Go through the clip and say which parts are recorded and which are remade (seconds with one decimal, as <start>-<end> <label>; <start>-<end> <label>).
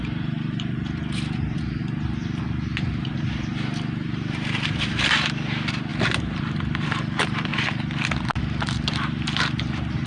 0.0-1.8 remade; 1.8-2.9 recorded; 2.9-5.9 remade; 5.9-6.4 recorded; 6.4-7.5 remade; 7.5-8.4 recorded; 8.4-10.1 remade